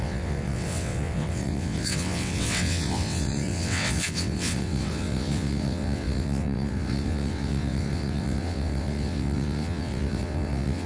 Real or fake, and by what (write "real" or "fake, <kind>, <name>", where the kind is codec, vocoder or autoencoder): fake, vocoder, WaveNeXt